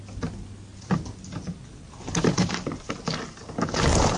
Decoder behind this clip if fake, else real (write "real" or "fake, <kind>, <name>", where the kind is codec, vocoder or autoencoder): real